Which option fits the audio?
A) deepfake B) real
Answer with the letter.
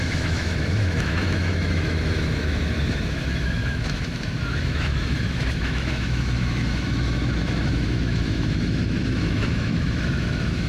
A